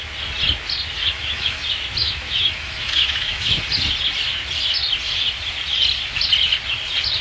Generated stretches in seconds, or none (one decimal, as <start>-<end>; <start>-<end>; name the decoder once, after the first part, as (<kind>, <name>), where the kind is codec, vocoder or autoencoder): 1.0-1.6 (autoencoder, DAC-VAE); 2.0-3.6